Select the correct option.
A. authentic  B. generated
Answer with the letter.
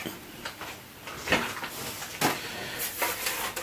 A